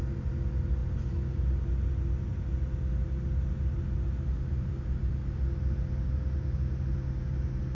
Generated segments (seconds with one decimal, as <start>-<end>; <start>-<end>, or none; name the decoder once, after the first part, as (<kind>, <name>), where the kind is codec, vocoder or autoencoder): none